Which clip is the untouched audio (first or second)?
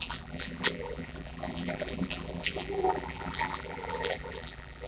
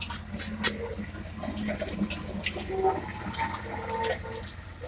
second